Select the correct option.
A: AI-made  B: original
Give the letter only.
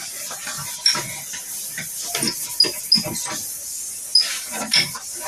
B